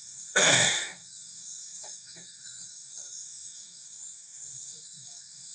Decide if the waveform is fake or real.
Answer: fake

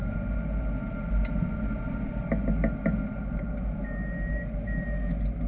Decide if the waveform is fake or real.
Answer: real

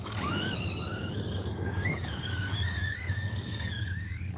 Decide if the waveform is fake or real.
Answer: fake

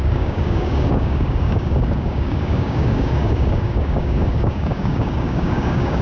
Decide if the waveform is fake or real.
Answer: fake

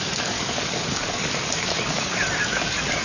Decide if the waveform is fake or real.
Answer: fake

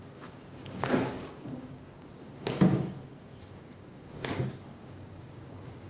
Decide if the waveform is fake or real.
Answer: fake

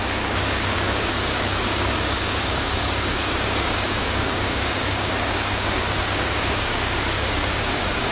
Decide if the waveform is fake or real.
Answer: fake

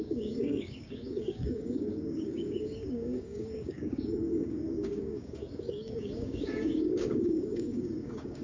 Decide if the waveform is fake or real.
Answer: fake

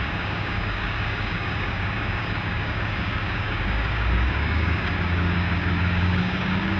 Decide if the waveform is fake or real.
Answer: fake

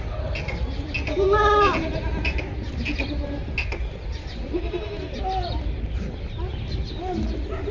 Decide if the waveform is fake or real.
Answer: real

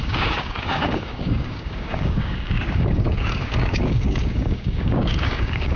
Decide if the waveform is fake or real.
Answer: fake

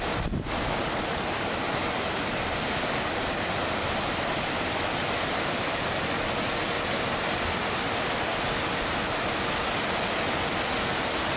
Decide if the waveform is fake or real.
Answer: real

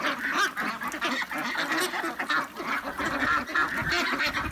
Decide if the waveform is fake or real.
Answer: real